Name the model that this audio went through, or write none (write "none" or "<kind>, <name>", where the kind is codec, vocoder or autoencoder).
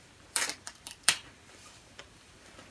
vocoder, BigVGAN v2